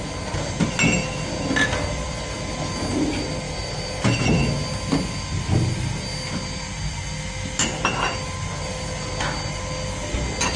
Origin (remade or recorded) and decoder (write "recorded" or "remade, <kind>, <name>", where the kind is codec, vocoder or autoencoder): recorded